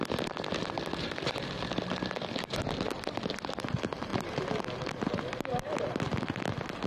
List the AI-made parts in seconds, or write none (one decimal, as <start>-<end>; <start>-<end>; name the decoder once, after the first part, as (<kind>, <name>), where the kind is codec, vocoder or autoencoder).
none